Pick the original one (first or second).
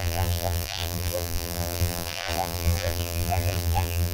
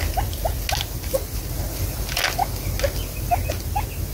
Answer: second